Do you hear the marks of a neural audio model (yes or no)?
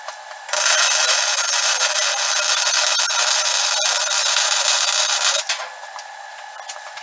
no